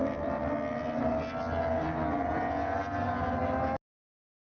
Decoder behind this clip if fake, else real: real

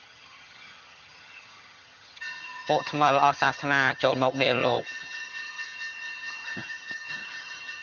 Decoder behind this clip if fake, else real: fake, vocoder, HiFi-GAN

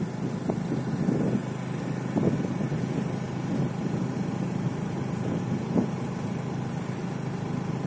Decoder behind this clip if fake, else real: real